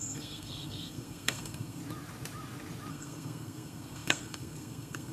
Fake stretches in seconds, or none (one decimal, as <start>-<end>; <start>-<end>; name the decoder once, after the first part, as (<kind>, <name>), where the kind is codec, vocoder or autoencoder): 0.0-1.8 (codec, SNAC); 2.9-5.1